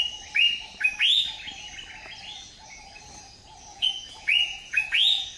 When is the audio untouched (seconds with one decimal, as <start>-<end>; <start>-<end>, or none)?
0.0-3.7